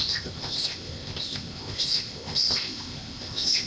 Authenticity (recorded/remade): remade